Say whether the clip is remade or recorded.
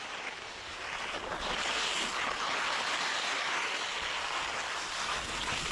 recorded